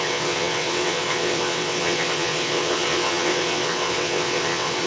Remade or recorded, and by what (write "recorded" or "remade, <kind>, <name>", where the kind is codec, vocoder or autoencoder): remade, vocoder, WaveNeXt